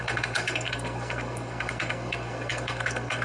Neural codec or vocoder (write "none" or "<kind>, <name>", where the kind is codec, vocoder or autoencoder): codec, SNAC